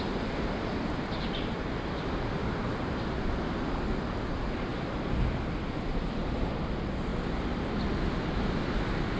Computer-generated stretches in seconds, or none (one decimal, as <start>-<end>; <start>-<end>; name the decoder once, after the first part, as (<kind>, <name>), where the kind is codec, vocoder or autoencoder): none